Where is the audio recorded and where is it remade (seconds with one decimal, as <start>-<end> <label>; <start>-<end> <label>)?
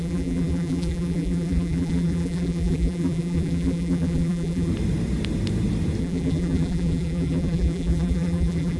0.0-4.7 remade; 4.7-6.0 recorded; 6.0-8.8 remade